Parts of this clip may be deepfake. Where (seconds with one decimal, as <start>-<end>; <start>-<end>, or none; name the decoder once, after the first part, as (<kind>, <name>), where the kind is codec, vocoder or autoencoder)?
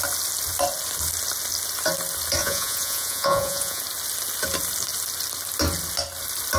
2.4-3.8 (vocoder, Vocos)